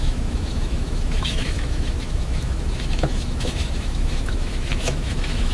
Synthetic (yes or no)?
yes